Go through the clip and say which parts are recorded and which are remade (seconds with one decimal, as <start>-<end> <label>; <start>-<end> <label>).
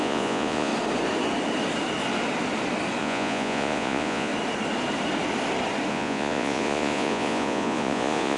0.0-0.7 remade; 0.7-3.0 recorded; 3.0-4.3 remade; 4.3-5.9 recorded; 5.9-8.4 remade